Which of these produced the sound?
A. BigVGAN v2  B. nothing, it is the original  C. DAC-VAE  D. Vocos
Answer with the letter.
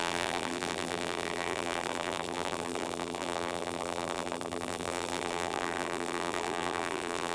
A